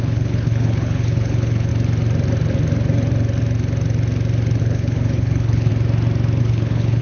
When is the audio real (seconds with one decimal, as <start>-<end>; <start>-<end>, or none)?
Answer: 1.7-4.6; 5.7-6.4